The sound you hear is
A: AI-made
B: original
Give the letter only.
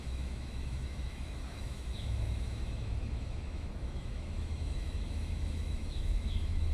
A